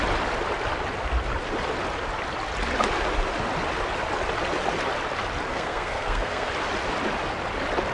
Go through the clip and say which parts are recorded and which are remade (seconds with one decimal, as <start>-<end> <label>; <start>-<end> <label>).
0.0-5.5 recorded; 5.5-6.5 remade; 6.5-7.9 recorded

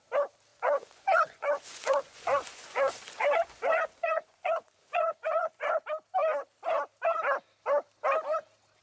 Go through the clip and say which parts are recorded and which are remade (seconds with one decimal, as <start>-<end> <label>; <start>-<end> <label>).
0.0-0.5 recorded; 0.5-5.7 remade; 5.7-8.8 recorded

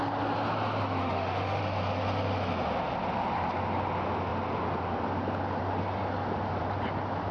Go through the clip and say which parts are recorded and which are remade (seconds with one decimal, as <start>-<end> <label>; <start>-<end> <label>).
0.0-1.0 recorded; 1.0-1.6 remade; 1.6-7.3 recorded

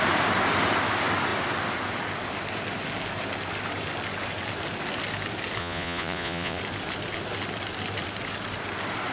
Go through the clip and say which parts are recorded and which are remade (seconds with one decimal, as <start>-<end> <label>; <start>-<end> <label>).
0.0-5.6 recorded; 5.6-6.6 remade; 6.6-9.1 recorded